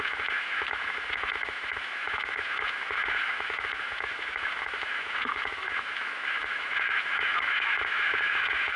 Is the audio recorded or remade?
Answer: remade